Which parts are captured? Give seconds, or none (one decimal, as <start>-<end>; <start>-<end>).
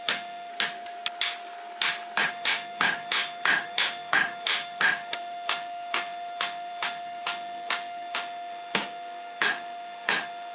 0.5-2.3